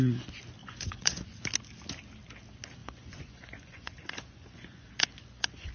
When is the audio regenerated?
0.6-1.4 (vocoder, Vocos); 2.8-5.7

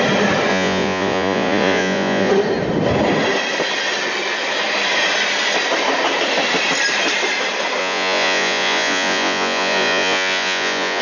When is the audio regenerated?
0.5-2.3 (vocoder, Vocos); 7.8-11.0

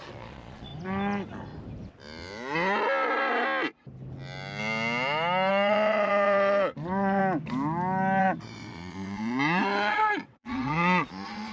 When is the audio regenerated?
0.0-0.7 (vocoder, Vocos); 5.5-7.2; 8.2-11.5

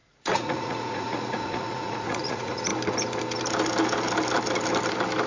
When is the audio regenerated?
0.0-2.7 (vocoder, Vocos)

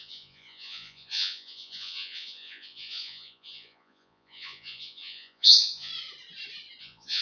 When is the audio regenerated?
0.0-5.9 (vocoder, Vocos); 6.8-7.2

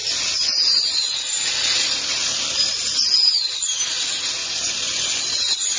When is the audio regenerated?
4.4-5.2 (vocoder, Vocos)

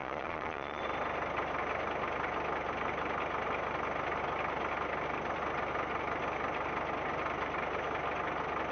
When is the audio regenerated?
0.0-0.8 (vocoder, Vocos)

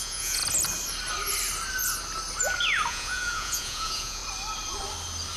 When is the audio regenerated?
0.0-0.4 (vocoder, Vocos); 2.9-4.2